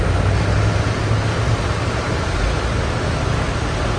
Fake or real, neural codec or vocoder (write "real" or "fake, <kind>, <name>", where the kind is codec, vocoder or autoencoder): real